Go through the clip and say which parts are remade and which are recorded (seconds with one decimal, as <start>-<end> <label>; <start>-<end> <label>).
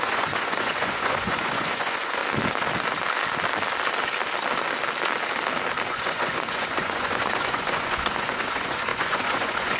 0.0-2.2 remade; 2.2-5.9 recorded; 5.9-9.8 remade